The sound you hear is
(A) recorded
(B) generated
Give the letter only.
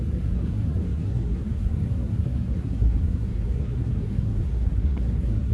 B